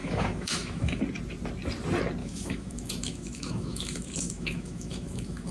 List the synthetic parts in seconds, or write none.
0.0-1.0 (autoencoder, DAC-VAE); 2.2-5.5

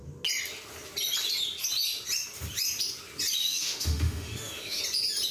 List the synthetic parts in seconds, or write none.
3.4-4.8 (autoencoder, DAC-VAE)

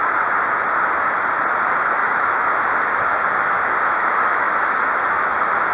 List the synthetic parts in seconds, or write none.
2.0-5.7 (autoencoder, DAC-VAE)